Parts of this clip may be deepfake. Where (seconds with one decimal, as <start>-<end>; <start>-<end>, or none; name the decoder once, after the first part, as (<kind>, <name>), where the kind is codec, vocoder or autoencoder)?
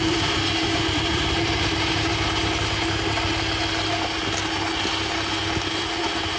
0.0-2.1 (vocoder, BigVGAN v2); 5.7-6.4